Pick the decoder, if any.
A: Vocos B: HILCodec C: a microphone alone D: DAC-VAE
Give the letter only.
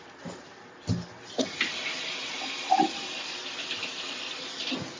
C